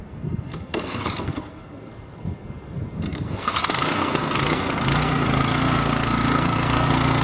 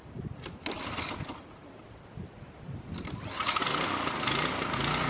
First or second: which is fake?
first